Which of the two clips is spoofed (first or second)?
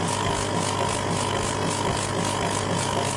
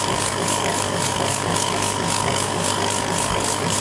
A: second